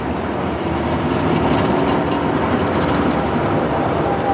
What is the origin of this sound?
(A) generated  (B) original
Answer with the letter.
B